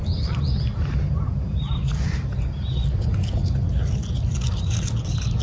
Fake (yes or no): no